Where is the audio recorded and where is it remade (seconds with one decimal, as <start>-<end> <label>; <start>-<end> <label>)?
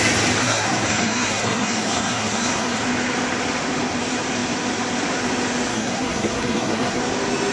0.0-0.4 recorded; 0.4-2.8 remade; 2.8-5.7 recorded; 5.7-7.0 remade; 7.0-7.5 recorded